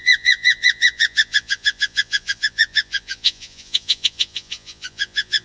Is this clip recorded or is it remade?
remade